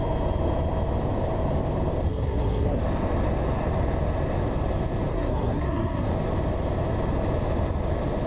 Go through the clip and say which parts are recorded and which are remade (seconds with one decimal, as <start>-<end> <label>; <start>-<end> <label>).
0.0-2.1 recorded; 2.1-2.8 remade; 2.8-5.1 recorded; 5.1-6.1 remade; 6.1-8.3 recorded